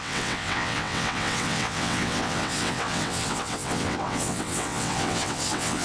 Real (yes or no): no